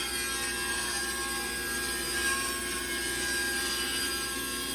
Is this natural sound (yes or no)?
yes